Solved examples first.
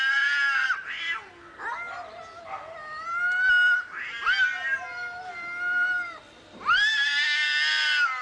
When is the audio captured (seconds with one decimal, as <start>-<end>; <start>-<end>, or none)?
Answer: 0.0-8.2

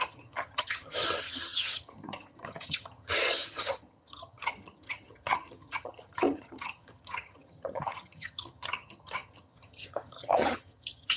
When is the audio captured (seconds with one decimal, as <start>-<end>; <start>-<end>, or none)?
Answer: none

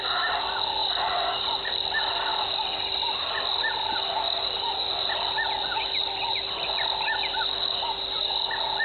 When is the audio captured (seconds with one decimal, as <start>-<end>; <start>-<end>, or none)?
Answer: 0.0-8.8

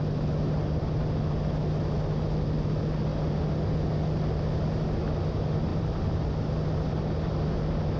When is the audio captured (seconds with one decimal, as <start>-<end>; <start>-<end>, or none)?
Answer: 0.0-5.7; 6.3-8.0